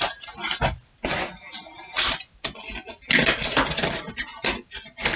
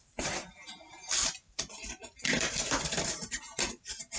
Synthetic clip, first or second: second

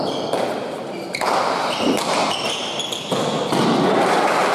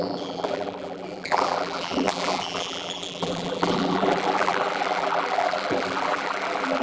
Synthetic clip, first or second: second